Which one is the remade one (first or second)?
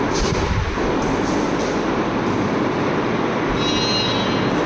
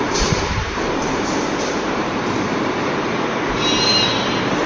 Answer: second